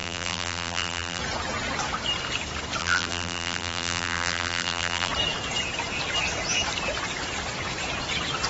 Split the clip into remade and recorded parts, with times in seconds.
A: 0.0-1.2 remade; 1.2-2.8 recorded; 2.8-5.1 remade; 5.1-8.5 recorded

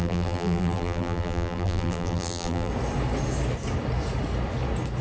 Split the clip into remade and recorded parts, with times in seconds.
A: 0.0-2.7 remade; 2.7-5.0 recorded

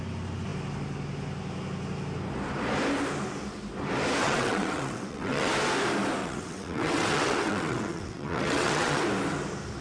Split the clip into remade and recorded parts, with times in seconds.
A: 0.0-4.2 recorded; 4.2-5.5 remade; 5.5-6.2 recorded; 6.2-9.0 remade; 9.0-9.8 recorded

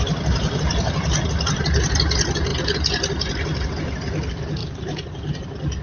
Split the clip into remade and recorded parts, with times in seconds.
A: 0.0-5.8 recorded

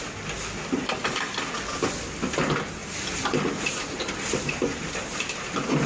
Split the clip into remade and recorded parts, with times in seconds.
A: 0.0-5.9 recorded

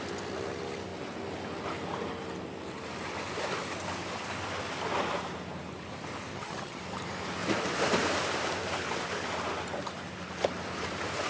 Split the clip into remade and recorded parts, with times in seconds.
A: 0.0-6.3 recorded; 6.3-6.8 remade; 6.8-11.3 recorded

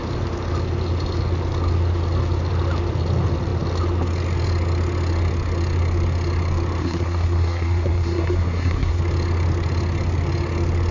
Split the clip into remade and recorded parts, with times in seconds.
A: 0.0-6.8 recorded; 6.8-9.0 remade; 9.0-10.9 recorded